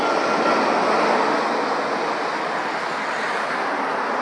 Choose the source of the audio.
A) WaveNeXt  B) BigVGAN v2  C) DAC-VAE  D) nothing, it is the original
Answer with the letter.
D